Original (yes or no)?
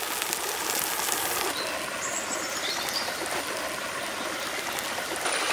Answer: yes